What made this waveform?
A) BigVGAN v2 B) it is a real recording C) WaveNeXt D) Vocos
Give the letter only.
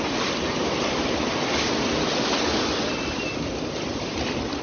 B